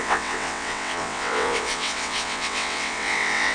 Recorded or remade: remade